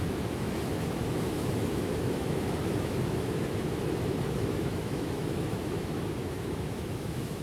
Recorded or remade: remade